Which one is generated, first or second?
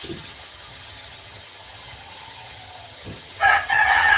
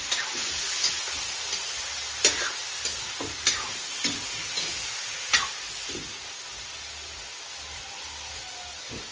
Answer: first